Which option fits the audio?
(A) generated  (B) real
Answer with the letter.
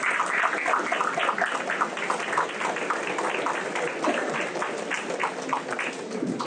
B